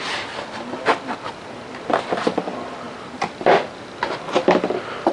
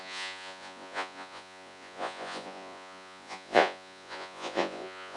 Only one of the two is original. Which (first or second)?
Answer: first